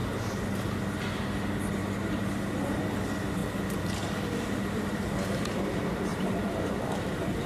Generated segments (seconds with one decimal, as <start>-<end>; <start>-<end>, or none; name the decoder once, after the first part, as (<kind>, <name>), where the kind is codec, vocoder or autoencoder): 6.1-7.1 (vocoder, BigVGAN v2)